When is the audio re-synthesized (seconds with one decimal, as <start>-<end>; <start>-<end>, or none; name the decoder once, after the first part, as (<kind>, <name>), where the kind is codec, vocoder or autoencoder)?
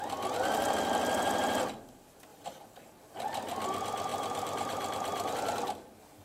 2.3-3.2 (vocoder, BigVGAN v2); 4.1-5.3